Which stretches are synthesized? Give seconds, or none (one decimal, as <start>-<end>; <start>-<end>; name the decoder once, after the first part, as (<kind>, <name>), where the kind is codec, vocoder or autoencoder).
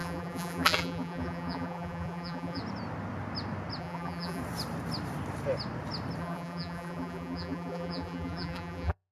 0.0-2.6 (vocoder, BigVGAN v2); 3.8-4.4; 6.2-9.1